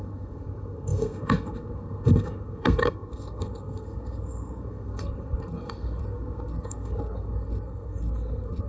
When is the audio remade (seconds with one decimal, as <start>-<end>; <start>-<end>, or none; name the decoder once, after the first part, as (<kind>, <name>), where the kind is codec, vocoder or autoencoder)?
0.0-8.7 (codec, SNAC)